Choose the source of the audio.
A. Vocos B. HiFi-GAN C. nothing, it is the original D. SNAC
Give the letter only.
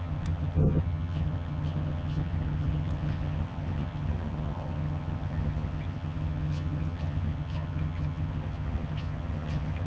B